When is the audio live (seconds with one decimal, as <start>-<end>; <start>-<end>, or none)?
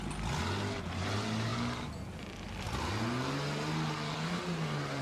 0.0-5.0